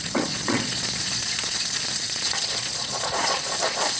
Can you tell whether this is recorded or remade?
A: remade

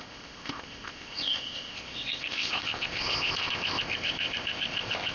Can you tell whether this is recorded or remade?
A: remade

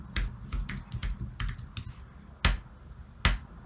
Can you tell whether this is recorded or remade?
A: recorded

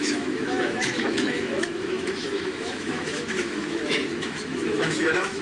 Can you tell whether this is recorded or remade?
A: remade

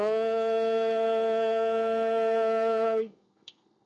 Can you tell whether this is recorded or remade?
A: remade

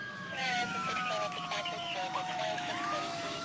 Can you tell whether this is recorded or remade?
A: remade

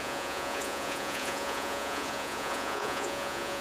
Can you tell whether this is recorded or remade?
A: remade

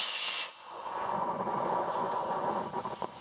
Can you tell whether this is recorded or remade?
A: remade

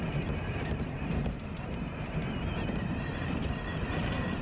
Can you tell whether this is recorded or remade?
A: remade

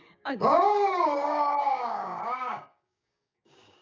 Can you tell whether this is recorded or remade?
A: remade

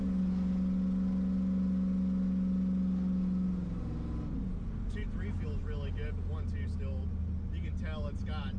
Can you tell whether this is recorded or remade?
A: recorded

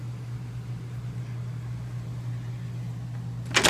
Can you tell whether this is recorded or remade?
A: recorded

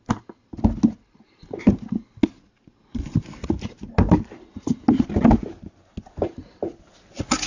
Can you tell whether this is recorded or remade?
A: recorded